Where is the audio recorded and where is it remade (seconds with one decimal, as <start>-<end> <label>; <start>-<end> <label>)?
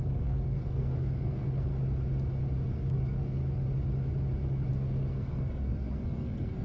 0.0-1.7 remade; 1.7-2.7 recorded; 2.7-3.4 remade; 3.4-4.7 recorded; 4.7-6.6 remade